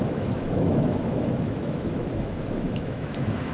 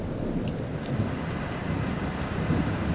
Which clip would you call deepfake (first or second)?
first